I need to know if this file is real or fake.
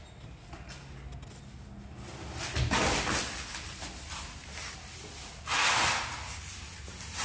real